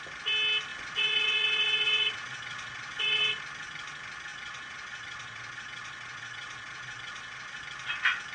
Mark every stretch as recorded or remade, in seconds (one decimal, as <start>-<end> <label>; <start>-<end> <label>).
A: 0.0-0.7 recorded; 0.7-3.4 remade; 3.4-4.3 recorded; 4.3-7.6 remade; 7.6-8.3 recorded